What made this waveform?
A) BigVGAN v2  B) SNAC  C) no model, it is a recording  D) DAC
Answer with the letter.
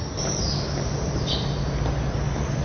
A